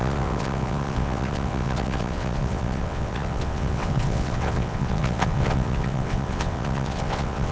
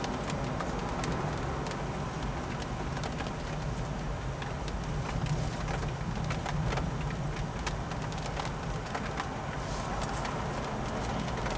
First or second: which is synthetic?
first